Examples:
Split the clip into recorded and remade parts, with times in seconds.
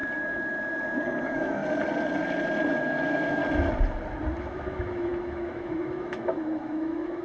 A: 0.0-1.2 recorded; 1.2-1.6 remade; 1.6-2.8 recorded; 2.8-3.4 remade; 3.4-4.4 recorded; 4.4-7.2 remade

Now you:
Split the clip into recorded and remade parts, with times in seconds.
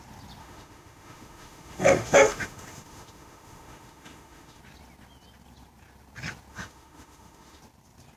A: 0.0-0.4 recorded; 0.4-4.6 remade; 4.6-6.5 recorded; 6.5-7.6 remade; 7.6-8.2 recorded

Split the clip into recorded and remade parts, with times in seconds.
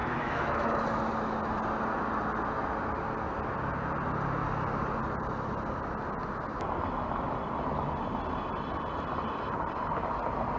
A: 0.0-0.8 remade; 0.8-10.6 recorded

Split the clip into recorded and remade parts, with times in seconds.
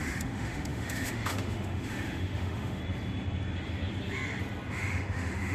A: 0.0-2.8 remade; 2.8-4.7 recorded; 4.7-5.5 remade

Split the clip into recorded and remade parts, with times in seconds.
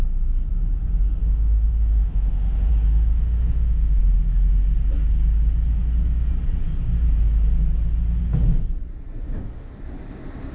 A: 0.0-1.2 recorded; 1.2-2.7 remade; 2.7-3.1 recorded; 3.1-4.0 remade; 4.0-9.2 recorded; 9.2-9.7 remade; 9.7-10.5 recorded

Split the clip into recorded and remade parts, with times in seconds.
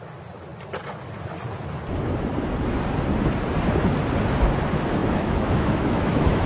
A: 0.0-5.0 recorded; 5.0-6.5 remade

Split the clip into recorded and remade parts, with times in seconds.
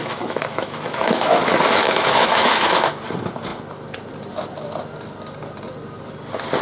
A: 0.0-1.4 remade; 1.4-1.8 recorded; 1.8-2.9 remade; 2.9-6.6 recorded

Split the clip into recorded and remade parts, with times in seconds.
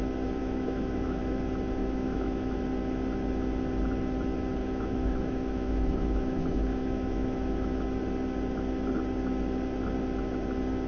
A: 0.0-0.4 recorded; 0.4-1.2 remade; 1.2-1.8 recorded; 1.8-2.6 remade; 2.6-4.6 recorded; 4.6-7.8 remade; 7.8-10.9 recorded